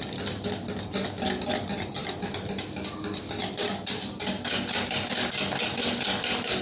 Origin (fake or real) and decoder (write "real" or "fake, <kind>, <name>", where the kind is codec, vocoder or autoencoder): real